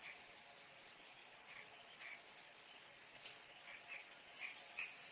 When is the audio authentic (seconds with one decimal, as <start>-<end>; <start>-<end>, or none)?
0.0-0.7